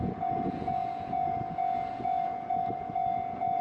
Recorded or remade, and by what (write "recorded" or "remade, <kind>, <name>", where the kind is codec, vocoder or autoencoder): remade, vocoder, Vocos